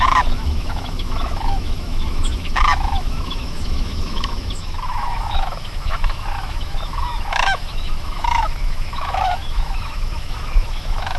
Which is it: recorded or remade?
remade